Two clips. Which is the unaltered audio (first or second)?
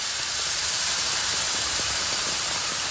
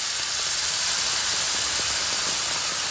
second